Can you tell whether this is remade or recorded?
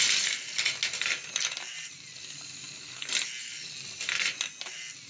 recorded